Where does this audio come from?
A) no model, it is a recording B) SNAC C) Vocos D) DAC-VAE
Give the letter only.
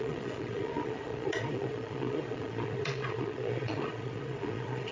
C